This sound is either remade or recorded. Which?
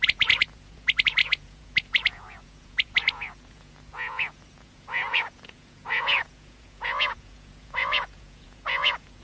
remade